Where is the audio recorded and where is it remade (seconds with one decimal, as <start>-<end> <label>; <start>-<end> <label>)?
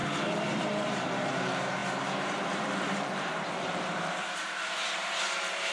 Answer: 0.0-5.7 remade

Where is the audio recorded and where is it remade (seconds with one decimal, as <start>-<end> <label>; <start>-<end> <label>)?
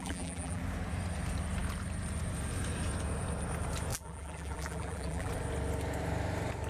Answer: 0.0-0.6 remade; 0.6-3.9 recorded; 3.9-5.3 remade; 5.3-6.7 recorded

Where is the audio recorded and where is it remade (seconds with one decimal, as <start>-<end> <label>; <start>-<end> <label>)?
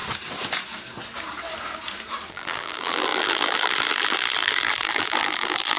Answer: 0.0-2.3 recorded; 2.3-5.8 remade